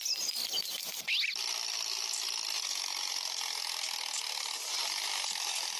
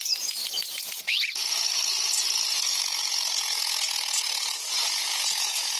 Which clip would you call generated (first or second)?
second